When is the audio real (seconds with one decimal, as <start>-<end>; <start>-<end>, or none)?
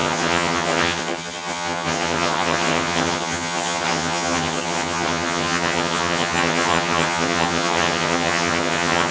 none